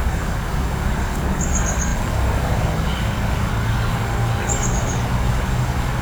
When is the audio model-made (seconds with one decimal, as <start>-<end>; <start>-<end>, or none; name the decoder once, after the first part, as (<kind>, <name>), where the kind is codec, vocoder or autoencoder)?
0.0-6.0 (codec, DAC)